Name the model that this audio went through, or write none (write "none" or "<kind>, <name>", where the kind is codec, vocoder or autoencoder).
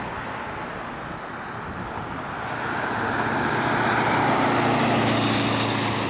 none